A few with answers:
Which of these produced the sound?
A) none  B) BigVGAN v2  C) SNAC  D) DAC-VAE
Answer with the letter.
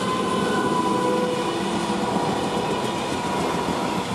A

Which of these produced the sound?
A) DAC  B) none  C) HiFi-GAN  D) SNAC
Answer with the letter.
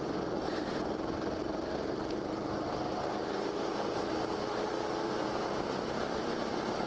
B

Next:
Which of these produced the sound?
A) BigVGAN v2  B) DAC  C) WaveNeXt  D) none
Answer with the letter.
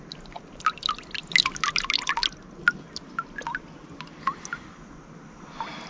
D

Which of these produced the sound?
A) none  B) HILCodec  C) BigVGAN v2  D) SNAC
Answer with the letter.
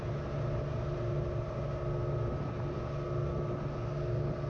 A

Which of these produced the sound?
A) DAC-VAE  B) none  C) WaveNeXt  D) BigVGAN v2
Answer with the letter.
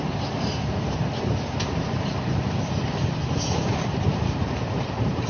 D